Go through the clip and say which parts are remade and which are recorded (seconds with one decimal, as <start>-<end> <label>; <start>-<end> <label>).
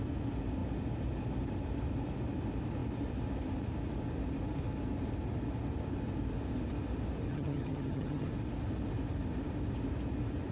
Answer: 0.0-7.3 recorded; 7.3-8.3 remade; 8.3-10.5 recorded